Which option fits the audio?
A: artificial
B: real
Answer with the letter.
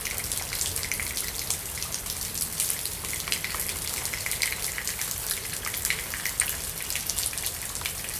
B